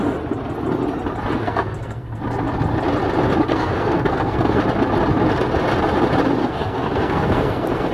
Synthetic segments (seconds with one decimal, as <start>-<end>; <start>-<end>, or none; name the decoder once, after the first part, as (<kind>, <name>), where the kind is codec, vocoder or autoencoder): 1.4-2.2 (codec, SNAC); 3.5-4.6; 6.4-7.9